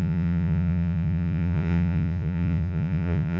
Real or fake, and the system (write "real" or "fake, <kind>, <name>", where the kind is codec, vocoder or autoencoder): fake, vocoder, Vocos